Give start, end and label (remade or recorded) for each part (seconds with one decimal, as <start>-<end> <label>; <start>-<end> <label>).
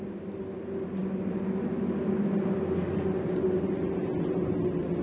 0.0-5.0 recorded